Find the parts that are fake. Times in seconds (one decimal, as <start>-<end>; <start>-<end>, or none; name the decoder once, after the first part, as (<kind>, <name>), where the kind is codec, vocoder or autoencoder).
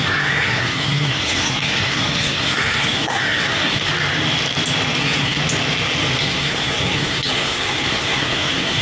0.0-3.9 (codec, SNAC); 5.0-5.4; 6.2-8.8